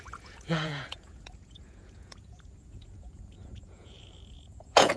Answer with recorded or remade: remade